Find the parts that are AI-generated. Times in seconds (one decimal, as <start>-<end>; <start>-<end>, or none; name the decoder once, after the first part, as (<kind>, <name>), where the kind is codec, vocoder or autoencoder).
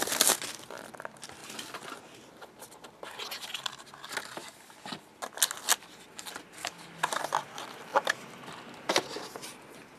4.4-4.9 (codec, DAC); 6.6-7.2